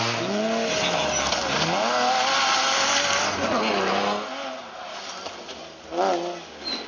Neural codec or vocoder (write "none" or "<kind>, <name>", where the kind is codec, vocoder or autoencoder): none